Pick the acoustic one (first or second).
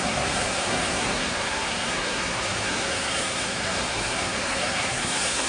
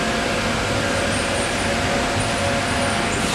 second